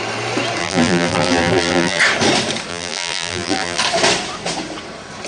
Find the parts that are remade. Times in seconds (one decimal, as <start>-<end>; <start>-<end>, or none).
0.6-2.0; 2.7-3.8